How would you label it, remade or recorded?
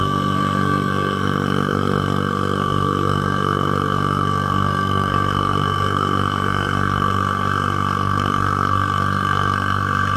remade